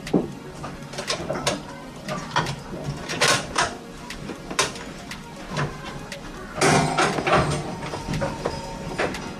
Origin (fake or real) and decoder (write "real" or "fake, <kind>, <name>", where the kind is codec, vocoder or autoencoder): real